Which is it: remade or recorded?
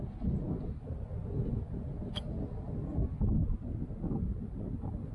recorded